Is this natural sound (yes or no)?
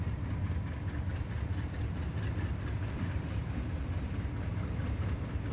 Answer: yes